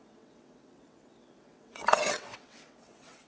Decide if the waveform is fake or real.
fake